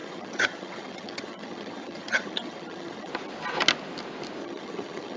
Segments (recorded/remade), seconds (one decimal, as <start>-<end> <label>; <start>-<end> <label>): 0.0-3.1 remade; 3.1-4.4 recorded; 4.4-5.2 remade

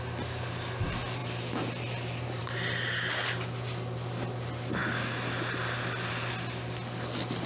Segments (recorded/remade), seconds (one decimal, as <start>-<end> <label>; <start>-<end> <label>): 0.0-7.5 recorded

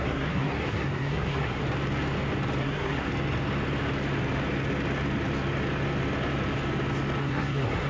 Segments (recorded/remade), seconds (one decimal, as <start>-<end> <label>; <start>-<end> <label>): 0.0-1.6 remade; 1.6-2.6 recorded; 2.6-3.1 remade; 3.1-7.2 recorded; 7.2-7.9 remade

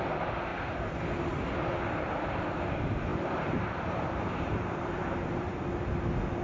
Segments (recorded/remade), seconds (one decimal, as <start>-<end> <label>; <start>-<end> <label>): 0.0-3.1 recorded; 3.1-5.5 remade; 5.5-6.4 recorded

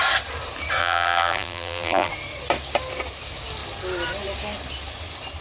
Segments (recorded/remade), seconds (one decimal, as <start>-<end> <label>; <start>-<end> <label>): 0.0-0.8 recorded; 0.8-2.1 remade; 2.1-5.4 recorded

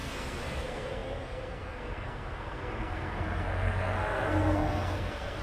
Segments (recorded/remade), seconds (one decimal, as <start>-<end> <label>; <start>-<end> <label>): 0.0-5.4 remade

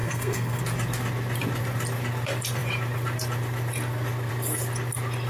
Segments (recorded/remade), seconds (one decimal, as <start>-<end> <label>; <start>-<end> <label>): 0.0-0.6 remade; 0.6-5.3 recorded

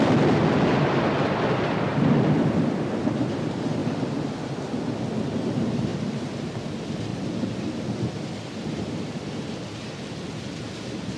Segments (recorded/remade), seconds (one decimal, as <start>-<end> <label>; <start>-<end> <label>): 0.0-11.2 recorded